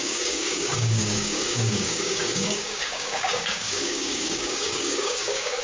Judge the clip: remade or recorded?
remade